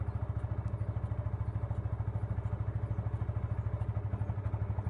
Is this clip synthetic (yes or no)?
no